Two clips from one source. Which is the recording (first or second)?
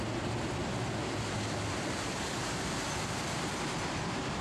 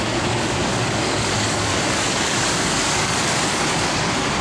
first